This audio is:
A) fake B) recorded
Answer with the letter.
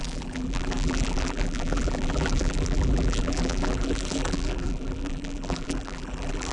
A